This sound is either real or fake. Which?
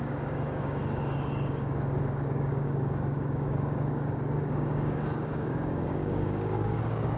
fake